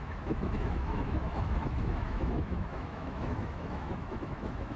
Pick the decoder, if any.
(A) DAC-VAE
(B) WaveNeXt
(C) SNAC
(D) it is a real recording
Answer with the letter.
A